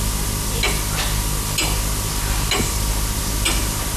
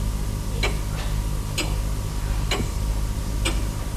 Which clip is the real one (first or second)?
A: first